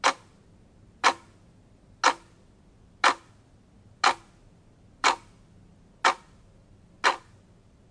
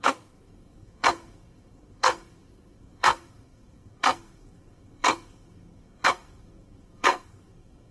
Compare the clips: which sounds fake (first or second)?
second